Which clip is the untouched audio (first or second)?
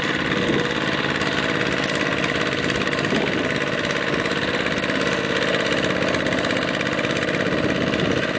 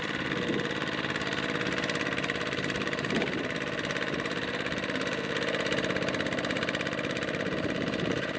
first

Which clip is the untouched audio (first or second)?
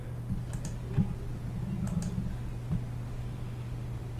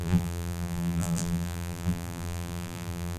first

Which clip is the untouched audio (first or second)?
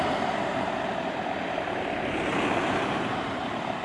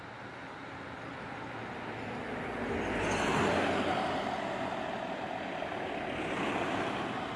second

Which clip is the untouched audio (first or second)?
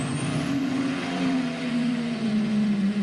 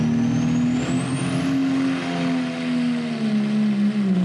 second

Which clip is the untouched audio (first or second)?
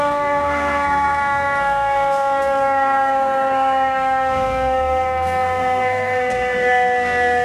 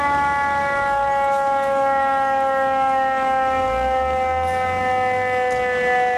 second